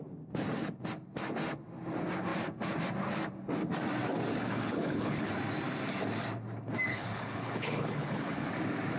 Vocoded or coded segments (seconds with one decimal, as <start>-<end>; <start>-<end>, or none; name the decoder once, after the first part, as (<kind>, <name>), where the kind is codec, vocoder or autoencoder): 4.3-5.3 (codec, HILCodec); 6.9-8.5